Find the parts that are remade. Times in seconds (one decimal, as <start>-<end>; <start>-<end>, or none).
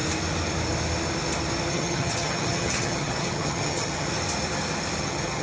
1.7-4.1; 5.0-5.4